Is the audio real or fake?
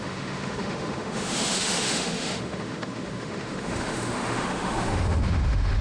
fake